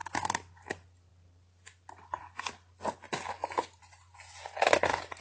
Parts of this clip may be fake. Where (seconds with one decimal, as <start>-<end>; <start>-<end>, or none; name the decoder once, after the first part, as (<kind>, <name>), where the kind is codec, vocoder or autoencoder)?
none